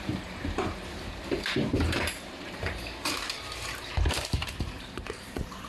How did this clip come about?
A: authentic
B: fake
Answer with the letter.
B